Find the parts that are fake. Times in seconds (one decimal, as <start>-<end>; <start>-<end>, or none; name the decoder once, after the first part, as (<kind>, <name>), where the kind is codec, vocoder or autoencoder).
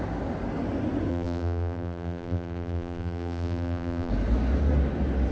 1.1-4.1 (vocoder, BigVGAN v2)